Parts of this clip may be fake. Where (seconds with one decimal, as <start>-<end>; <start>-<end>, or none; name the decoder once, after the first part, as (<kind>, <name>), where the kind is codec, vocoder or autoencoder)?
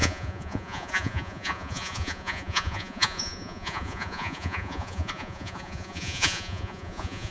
0.0-7.3 (vocoder, Vocos)